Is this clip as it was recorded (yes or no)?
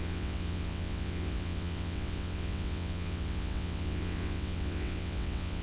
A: no